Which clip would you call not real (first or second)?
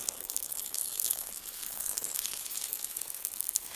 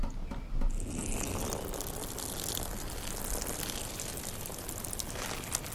first